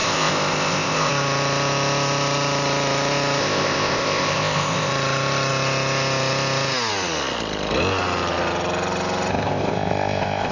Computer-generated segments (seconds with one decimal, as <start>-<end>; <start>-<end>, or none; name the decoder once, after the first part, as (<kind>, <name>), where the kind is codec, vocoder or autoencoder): 0.0-1.1 (codec, ZipCodec); 3.4-4.9; 9.3-10.5